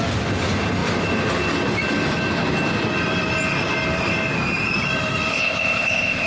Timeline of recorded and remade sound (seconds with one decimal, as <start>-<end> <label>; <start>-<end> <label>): 0.0-5.3 recorded; 5.3-6.3 remade